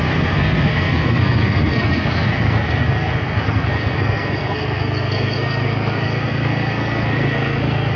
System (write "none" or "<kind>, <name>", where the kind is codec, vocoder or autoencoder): codec, SNAC